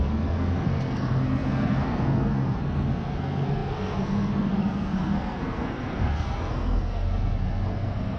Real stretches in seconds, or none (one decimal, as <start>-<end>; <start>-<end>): none

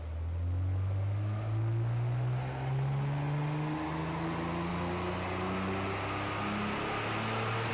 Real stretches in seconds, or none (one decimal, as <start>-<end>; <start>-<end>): 0.0-7.7

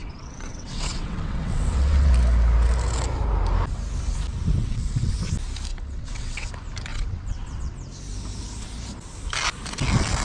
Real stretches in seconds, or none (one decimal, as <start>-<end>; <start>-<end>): 2.1-4.6; 5.1-5.7; 6.5-6.9; 7.7-10.2

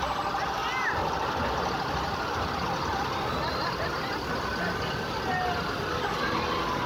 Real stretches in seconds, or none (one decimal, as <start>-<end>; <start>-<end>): 0.0-6.9

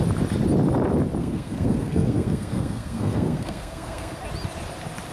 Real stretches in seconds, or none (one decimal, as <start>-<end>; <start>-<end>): 0.0-1.2; 4.2-5.1